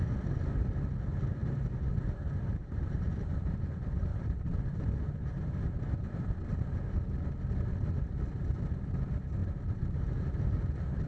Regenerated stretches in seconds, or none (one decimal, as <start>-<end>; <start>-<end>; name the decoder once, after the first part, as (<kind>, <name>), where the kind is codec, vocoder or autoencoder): 1.4-3.5 (vocoder, BigVGAN v2); 4.1-6.3; 9.4-11.1